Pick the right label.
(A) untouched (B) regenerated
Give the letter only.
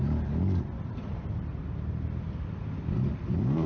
A